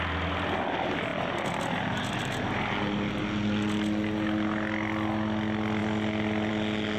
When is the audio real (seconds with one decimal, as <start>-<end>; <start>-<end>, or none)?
0.0-7.0